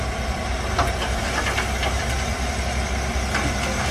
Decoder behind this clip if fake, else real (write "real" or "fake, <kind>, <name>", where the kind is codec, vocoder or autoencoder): real